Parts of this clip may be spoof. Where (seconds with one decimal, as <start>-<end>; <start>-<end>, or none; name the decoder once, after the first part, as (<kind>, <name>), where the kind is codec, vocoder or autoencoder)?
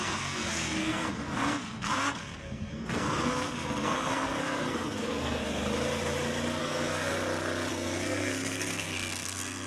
0.0-5.4 (codec, SNAC); 6.6-7.1; 7.7-9.7